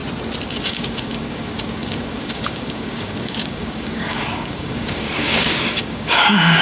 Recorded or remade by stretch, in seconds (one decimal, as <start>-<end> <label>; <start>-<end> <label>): 0.0-0.5 recorded; 0.5-6.6 remade